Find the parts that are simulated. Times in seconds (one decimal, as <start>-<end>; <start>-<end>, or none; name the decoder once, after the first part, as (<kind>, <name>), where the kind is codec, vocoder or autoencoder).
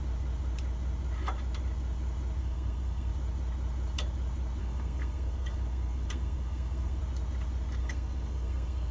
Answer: 2.4-3.1 (codec, SNAC); 4.6-7.0; 7.8-8.9